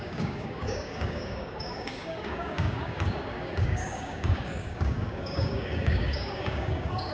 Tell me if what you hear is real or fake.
fake